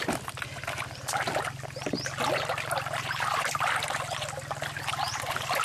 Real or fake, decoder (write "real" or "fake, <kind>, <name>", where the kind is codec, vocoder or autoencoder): real